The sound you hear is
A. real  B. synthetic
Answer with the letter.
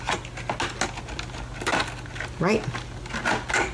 A